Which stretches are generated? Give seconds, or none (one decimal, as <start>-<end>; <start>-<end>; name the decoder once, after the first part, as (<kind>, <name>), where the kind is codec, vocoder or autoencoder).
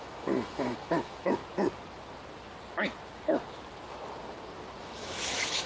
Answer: 0.0-1.4 (autoencoder, DAC-VAE); 4.8-5.7